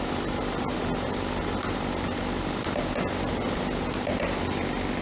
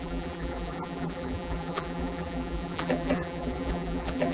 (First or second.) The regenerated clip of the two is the second